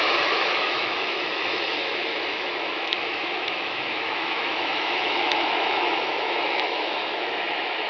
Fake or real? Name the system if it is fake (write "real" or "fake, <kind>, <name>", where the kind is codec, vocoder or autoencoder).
fake, autoencoder, DAC-VAE